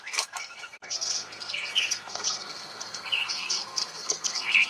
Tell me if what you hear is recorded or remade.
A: remade